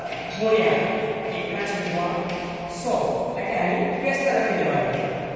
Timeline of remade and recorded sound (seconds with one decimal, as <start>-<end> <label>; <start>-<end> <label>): 0.0-5.4 recorded